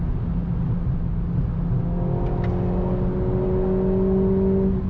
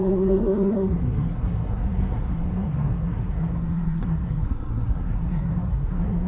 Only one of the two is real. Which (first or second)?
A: first